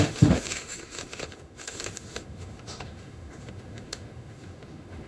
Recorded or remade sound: remade